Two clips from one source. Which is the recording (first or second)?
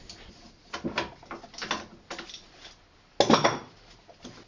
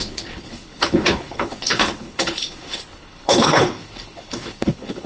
first